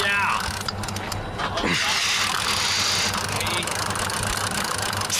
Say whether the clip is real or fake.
real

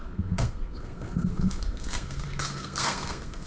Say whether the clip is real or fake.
fake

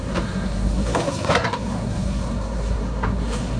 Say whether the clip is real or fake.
fake